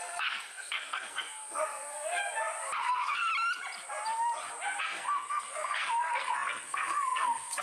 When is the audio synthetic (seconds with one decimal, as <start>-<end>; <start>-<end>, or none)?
0.0-2.2; 2.8-3.3; 4.8-7.6